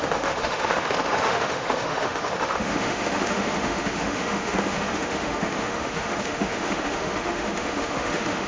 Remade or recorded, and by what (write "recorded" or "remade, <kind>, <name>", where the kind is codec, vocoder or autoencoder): remade, autoencoder, DAC-VAE